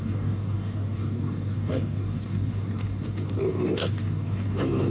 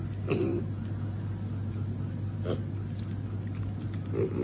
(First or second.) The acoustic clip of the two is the second